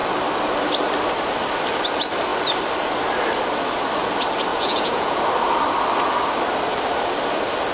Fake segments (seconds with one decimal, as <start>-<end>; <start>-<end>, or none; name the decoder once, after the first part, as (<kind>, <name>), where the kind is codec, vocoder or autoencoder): 4.5-5.2 (vocoder, Vocos)